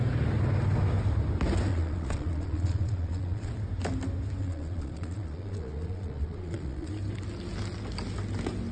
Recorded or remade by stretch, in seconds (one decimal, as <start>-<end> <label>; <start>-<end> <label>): 0.0-1.7 recorded; 1.7-3.5 remade; 3.5-4.4 recorded; 4.4-6.9 remade; 6.9-8.7 recorded

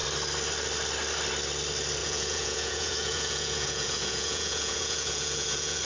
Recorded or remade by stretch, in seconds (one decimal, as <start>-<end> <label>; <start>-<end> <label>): 0.0-2.0 recorded; 2.0-5.8 remade

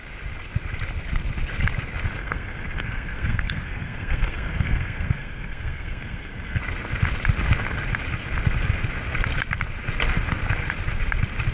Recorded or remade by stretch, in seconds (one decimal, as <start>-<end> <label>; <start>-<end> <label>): 0.0-2.2 recorded; 2.2-6.6 remade; 6.6-11.5 recorded

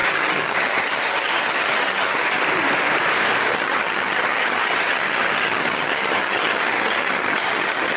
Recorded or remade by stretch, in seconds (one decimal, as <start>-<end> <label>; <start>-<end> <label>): 0.0-2.4 remade; 2.4-3.5 recorded; 3.5-8.0 remade

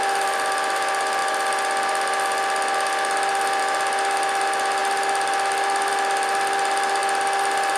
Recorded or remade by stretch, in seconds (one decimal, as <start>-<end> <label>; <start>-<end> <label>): 0.0-7.8 recorded

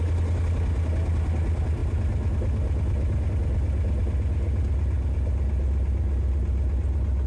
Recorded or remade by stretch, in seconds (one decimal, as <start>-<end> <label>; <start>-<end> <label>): 0.0-7.3 recorded